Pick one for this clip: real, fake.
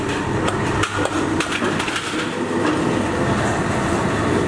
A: real